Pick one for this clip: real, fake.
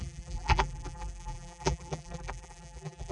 fake